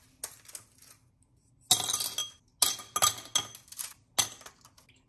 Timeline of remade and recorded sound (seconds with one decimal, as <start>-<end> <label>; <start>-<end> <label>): 0.0-5.1 recorded